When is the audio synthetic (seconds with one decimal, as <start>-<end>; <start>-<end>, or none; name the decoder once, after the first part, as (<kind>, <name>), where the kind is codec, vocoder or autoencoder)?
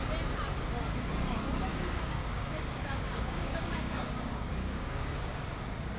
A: 1.7-5.3 (codec, DAC)